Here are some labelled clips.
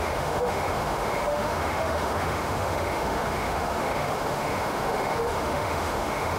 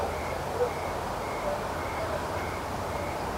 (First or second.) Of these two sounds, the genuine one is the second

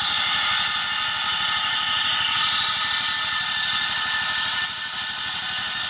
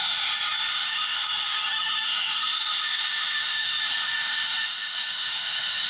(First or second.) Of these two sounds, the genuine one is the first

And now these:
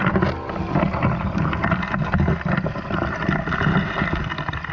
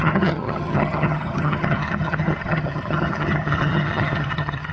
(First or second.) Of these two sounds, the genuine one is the first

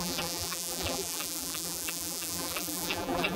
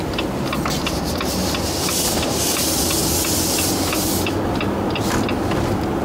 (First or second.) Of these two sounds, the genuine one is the second